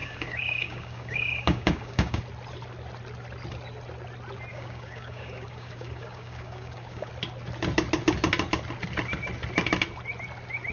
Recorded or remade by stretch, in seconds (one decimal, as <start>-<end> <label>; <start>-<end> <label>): 0.0-2.2 remade; 2.2-4.5 recorded; 4.5-7.1 remade; 7.1-10.7 recorded